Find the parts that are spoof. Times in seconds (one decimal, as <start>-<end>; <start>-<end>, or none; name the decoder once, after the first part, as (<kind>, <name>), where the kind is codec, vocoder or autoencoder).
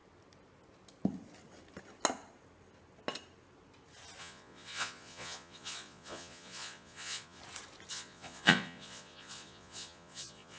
4.2-7.4 (vocoder, Vocos); 7.9-10.6